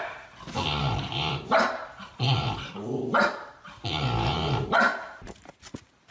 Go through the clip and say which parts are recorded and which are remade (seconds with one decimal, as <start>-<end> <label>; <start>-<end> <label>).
0.0-0.8 recorded; 0.8-4.5 remade; 4.5-4.9 recorded; 4.9-5.6 remade; 5.6-6.1 recorded